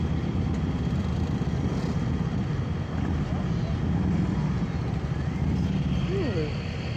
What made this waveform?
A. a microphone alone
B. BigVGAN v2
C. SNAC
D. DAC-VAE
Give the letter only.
A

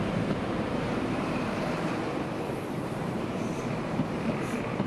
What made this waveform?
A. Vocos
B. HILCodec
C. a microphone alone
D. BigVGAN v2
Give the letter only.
D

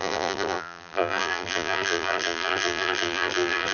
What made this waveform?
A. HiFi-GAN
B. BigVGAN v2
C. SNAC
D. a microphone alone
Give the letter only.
B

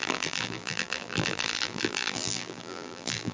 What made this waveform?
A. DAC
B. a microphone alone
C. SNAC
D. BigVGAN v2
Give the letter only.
D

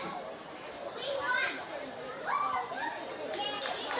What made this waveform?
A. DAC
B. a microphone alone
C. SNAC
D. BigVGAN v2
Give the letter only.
D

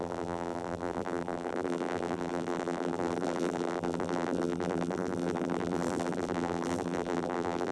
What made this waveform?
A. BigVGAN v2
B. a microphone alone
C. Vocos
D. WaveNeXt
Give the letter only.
A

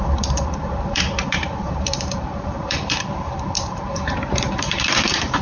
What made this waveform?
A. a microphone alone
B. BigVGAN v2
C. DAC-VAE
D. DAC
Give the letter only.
B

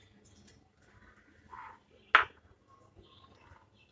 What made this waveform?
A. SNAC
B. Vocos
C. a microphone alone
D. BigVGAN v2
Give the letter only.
C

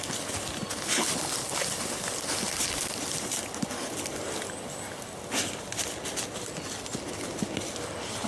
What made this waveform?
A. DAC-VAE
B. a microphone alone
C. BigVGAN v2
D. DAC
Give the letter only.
B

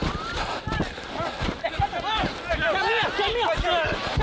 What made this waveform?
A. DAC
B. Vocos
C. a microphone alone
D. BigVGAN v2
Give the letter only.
C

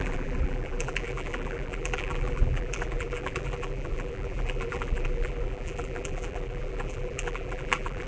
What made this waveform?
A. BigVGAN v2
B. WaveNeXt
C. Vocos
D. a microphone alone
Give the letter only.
A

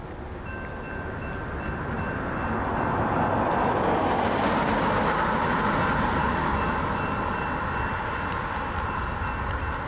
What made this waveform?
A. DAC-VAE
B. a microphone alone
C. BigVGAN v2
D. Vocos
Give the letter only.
C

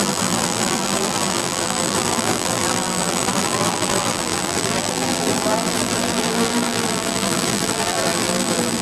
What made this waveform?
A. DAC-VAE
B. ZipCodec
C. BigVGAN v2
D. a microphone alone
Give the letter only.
C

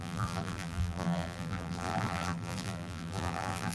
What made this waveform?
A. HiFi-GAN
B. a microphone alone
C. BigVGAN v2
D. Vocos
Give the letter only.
C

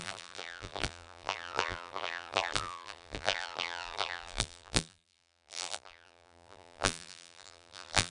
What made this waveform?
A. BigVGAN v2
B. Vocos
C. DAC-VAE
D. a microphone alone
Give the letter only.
A